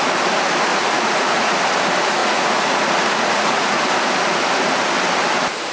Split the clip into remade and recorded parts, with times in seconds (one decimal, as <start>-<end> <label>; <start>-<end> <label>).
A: 0.0-0.7 recorded; 0.7-1.6 remade; 1.6-2.2 recorded; 2.2-3.8 remade; 3.8-5.7 recorded